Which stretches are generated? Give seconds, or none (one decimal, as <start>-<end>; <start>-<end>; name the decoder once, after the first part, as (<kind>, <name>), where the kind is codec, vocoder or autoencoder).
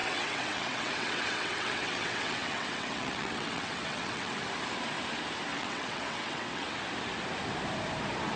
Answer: 0.0-4.4 (vocoder, WaveNeXt); 5.5-6.7